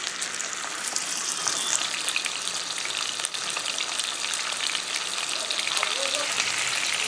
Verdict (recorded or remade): recorded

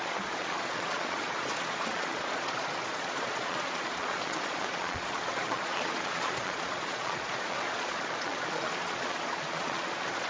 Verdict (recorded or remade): remade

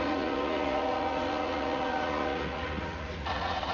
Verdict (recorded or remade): remade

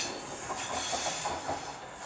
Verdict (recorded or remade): recorded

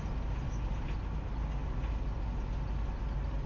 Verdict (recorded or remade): recorded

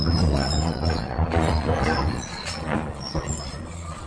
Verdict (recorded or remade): remade